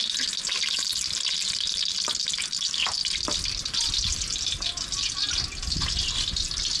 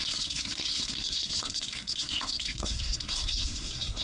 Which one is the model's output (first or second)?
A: second